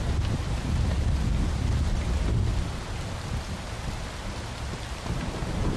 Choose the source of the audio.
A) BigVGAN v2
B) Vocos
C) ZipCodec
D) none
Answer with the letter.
D